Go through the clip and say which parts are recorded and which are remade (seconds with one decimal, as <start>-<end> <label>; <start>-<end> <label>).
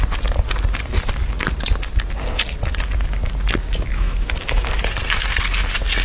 0.0-3.9 recorded; 3.9-4.7 remade; 4.7-6.0 recorded